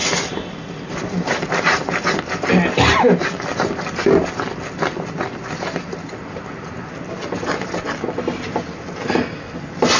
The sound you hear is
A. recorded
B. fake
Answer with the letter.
A